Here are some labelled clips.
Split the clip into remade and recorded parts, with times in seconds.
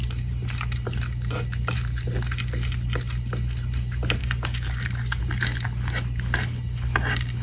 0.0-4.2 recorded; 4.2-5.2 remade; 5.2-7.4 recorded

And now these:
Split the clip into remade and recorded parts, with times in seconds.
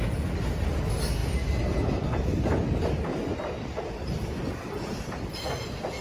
0.0-6.0 recorded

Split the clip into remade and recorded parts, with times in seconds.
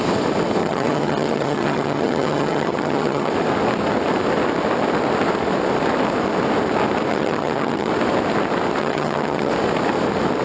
0.0-0.6 recorded; 0.6-3.3 remade; 3.3-7.1 recorded; 7.1-7.9 remade; 7.9-8.8 recorded; 8.8-9.5 remade; 9.5-10.4 recorded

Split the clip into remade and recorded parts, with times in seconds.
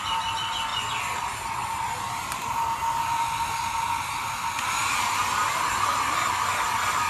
0.0-7.1 recorded